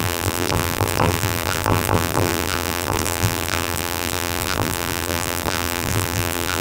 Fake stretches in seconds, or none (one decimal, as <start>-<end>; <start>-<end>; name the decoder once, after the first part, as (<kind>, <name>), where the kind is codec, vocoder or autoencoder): 0.0-6.6 (vocoder, BigVGAN v2)